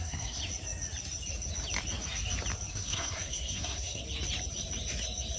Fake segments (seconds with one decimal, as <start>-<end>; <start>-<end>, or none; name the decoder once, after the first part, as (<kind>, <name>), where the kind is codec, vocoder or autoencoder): 0.0-0.4 (codec, SNAC); 2.7-4.0